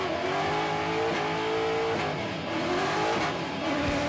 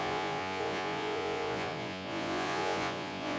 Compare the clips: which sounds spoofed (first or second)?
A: second